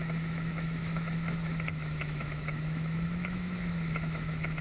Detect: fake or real fake